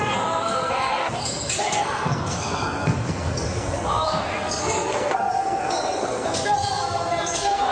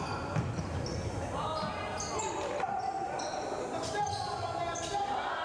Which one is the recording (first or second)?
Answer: second